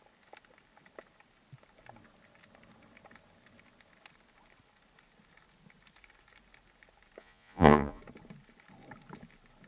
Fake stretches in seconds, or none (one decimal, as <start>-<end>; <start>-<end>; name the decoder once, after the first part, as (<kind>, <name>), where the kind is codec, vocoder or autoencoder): 7.2-8.0 (vocoder, Vocos)